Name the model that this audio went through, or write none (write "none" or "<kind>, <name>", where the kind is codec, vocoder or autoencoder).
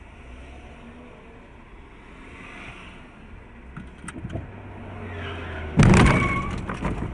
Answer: none